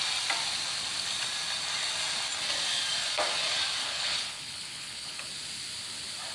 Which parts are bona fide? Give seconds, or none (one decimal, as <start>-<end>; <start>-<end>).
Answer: 0.0-3.8; 5.3-6.3